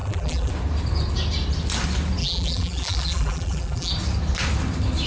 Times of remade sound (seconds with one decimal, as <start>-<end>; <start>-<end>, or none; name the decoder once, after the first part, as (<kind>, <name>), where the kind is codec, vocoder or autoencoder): 0.0-0.5 (vocoder, BigVGAN v2); 2.2-3.9